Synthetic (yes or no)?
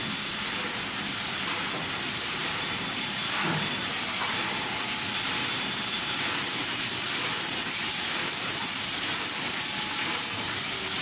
yes